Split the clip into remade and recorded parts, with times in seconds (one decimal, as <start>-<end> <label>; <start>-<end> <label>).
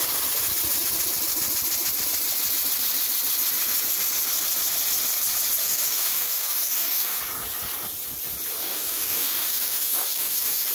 0.0-5.6 recorded; 5.6-7.2 remade; 7.2-8.6 recorded; 8.6-10.7 remade